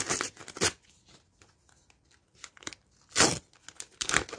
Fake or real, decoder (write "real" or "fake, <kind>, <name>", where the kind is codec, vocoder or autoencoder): real